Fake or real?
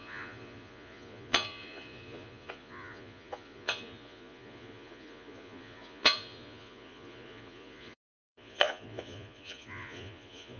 fake